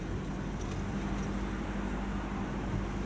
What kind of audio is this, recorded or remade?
recorded